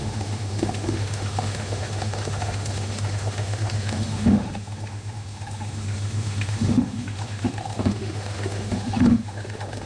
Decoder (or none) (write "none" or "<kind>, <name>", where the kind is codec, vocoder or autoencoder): autoencoder, DAC-VAE